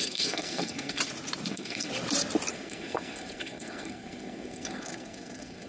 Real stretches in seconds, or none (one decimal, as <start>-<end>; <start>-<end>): 1.0-1.5; 1.9-2.5